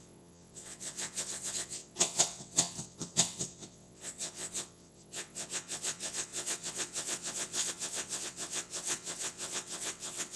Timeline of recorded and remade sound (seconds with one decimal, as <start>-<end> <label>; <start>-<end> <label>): 0.0-10.4 remade